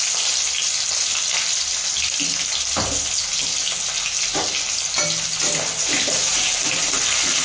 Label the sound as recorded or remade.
recorded